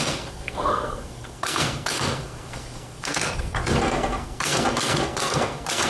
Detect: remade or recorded remade